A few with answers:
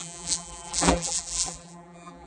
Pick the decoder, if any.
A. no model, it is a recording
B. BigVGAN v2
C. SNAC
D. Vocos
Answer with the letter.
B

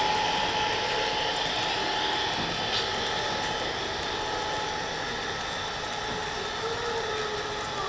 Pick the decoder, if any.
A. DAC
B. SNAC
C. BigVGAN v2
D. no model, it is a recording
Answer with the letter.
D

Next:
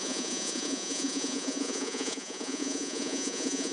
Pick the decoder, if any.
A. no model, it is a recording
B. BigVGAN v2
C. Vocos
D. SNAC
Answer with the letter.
C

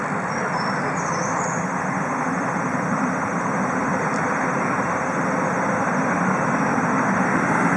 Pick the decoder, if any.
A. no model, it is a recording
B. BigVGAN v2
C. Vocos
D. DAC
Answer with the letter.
A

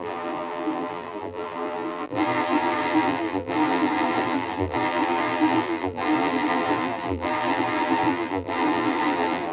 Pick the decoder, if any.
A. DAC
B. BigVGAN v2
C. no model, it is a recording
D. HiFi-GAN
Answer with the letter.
B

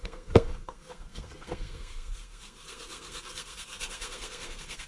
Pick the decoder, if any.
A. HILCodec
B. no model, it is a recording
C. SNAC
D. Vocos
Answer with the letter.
C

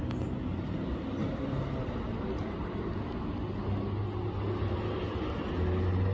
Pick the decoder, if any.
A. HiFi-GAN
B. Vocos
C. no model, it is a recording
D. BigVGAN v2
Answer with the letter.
C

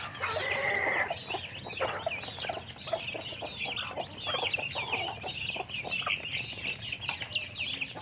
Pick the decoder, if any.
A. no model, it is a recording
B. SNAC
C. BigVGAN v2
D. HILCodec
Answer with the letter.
A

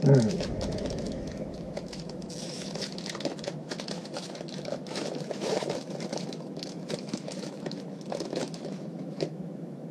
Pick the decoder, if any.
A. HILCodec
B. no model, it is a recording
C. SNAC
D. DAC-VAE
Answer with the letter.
D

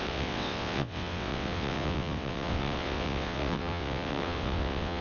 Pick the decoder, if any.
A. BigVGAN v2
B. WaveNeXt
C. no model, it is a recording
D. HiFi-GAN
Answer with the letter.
B